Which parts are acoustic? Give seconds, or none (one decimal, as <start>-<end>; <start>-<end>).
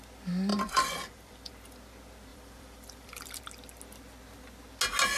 0.0-0.5; 1.5-2.3; 3.4-5.2